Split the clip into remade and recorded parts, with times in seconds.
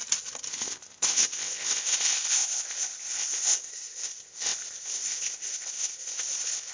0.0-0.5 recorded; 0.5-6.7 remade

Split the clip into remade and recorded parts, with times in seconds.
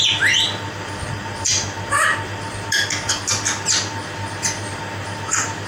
0.0-5.7 recorded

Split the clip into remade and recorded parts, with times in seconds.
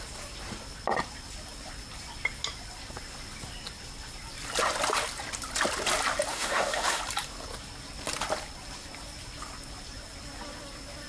0.0-6.3 recorded; 6.3-7.0 remade; 7.0-11.1 recorded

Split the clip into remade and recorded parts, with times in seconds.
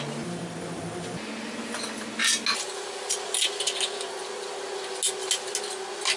0.0-6.2 recorded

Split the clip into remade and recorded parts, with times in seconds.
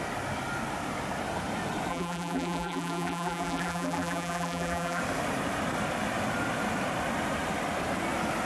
0.0-1.9 recorded; 1.9-5.0 remade; 5.0-8.5 recorded